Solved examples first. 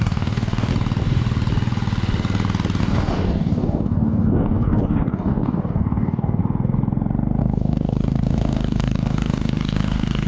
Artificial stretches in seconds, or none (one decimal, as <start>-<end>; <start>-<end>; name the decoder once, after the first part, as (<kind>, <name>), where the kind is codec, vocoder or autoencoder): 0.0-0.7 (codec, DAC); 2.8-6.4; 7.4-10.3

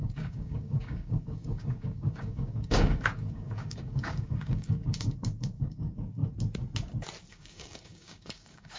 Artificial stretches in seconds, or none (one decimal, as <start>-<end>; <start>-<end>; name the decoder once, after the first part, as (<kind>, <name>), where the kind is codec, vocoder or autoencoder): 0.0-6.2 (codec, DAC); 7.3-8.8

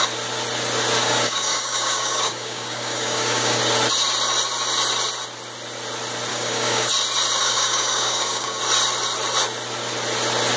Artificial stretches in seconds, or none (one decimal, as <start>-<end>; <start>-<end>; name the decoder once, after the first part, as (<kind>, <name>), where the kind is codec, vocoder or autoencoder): 1.0-3.6 (codec, DAC); 6.3-6.9; 7.4-8.6

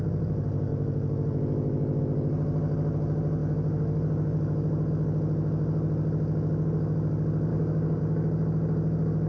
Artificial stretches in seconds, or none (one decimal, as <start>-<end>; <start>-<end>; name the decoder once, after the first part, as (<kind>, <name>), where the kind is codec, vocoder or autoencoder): 7.5-8.0 (codec, DAC)

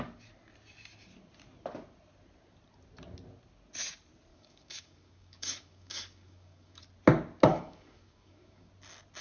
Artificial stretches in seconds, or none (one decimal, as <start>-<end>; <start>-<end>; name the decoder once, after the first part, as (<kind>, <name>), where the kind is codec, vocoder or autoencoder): 4.3-6.8 (codec, DAC); 7.5-8.7

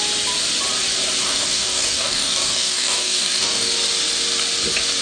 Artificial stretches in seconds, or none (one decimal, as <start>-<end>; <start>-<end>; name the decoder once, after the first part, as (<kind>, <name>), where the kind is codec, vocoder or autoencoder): 1.2-3.7 (codec, DAC)